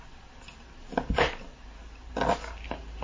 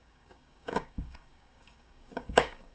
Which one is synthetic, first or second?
second